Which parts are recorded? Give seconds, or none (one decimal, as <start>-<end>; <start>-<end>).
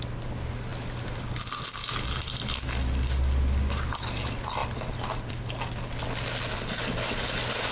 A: 0.0-7.7